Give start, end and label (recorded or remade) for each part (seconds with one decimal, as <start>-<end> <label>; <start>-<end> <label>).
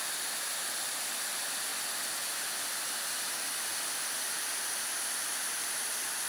0.0-6.3 recorded